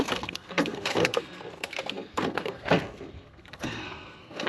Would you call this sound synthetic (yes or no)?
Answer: yes